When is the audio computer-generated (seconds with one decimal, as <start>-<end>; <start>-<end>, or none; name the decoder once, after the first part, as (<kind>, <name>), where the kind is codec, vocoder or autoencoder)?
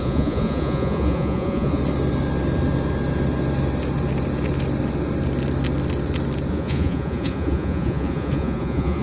0.0-1.8 (vocoder, Vocos); 6.5-9.0